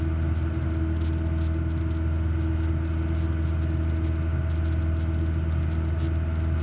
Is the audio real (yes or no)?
yes